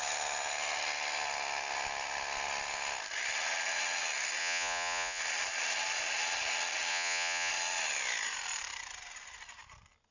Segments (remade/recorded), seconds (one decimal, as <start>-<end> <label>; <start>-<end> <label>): 0.0-4.4 recorded; 4.4-5.2 remade; 5.2-6.9 recorded; 6.9-7.5 remade; 7.5-10.1 recorded